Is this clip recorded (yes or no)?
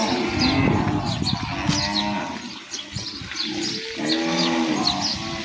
yes